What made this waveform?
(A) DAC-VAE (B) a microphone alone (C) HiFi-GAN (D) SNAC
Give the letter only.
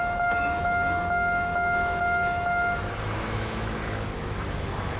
A